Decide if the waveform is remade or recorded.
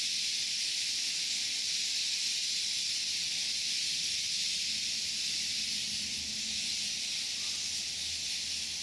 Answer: recorded